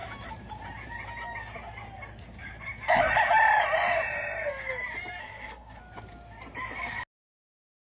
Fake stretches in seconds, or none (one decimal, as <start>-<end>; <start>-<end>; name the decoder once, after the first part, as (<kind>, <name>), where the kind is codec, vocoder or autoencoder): 5.2-5.8 (codec, SNAC)